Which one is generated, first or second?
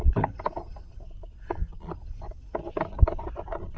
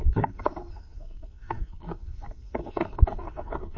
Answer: second